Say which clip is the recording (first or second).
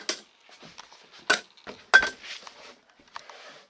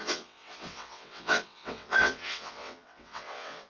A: first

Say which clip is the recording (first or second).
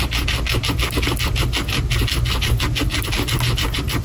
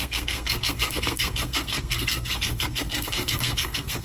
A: first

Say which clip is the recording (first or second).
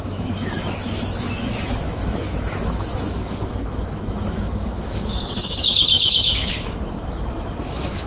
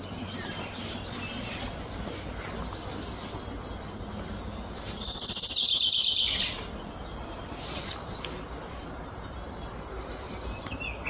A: second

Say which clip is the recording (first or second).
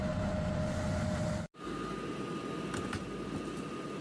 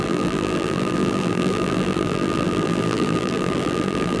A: first